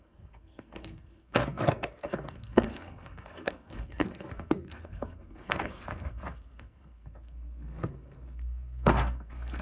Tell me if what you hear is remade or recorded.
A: remade